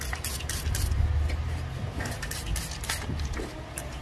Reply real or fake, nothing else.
real